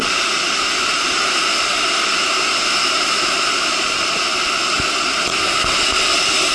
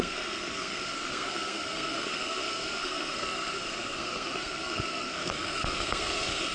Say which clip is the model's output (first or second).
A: second